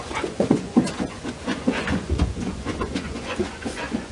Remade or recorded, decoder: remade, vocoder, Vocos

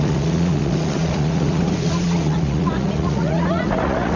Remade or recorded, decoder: remade, vocoder, Vocos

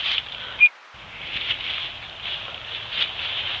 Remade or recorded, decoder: recorded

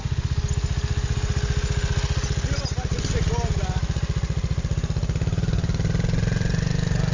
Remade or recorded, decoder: recorded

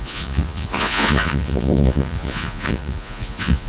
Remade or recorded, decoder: remade, vocoder, Vocos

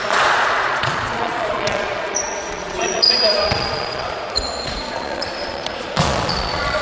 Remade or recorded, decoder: remade, vocoder, Vocos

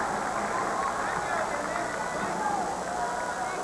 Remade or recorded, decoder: recorded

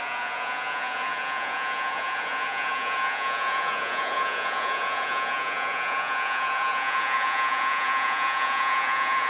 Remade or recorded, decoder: remade, vocoder, Vocos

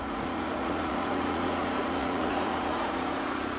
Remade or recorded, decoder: remade, vocoder, Vocos